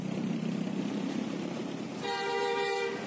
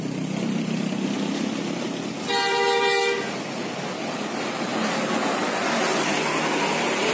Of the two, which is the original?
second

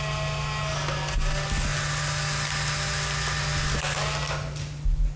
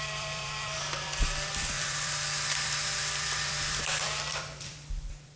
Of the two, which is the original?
first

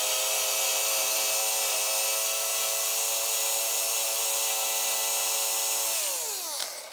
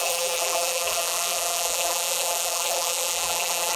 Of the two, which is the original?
first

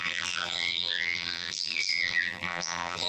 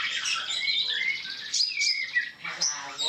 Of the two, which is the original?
second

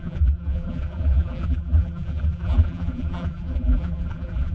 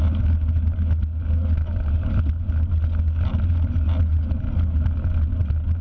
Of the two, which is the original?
second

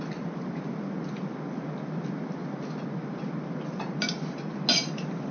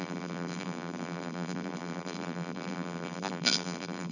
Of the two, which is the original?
first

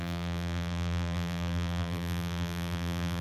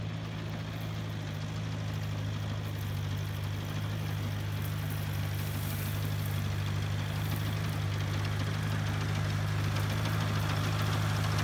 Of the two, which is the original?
second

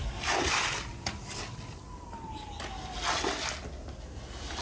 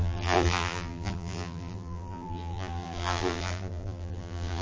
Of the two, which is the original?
first